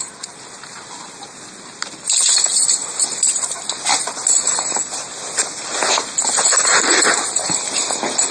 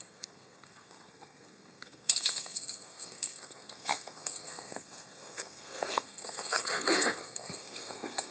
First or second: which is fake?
second